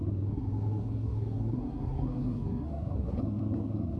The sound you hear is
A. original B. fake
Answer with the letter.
B